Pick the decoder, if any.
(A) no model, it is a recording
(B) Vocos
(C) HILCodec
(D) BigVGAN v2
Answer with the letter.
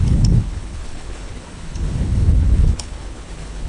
C